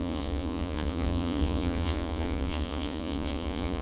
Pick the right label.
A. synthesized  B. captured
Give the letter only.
A